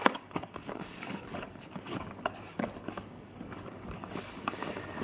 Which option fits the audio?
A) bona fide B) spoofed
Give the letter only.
B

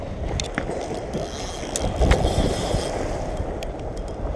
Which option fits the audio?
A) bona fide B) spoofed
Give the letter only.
A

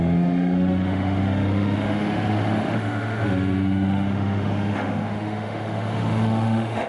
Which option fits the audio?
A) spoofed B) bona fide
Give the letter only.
A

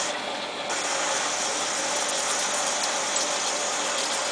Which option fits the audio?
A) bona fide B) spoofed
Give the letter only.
A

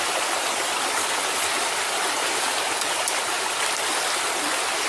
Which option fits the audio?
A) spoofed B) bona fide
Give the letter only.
B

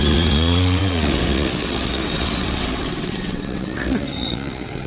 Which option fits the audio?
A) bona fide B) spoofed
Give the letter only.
B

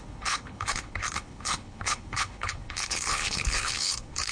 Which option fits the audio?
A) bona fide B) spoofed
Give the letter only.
B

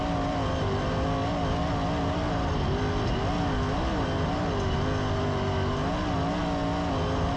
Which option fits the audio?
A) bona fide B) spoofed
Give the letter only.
A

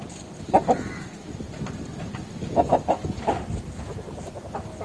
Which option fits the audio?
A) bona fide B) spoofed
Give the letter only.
A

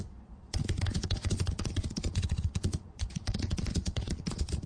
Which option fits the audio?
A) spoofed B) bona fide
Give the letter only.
A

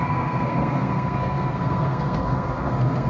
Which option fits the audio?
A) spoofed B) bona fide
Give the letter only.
A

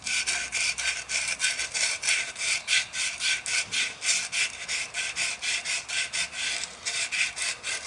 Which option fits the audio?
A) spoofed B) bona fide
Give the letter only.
B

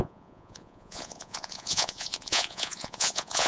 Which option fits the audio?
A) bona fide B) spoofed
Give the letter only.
B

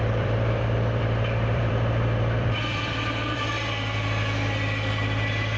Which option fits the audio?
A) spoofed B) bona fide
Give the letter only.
A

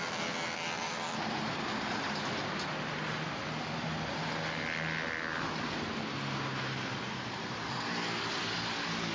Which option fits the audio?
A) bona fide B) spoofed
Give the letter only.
A